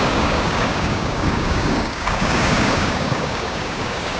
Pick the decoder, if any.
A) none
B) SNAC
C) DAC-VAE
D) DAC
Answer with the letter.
D